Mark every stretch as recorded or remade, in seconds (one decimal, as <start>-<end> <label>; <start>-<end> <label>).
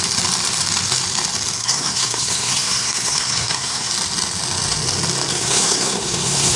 0.0-1.6 recorded; 1.6-3.9 remade; 3.9-5.3 recorded; 5.3-6.6 remade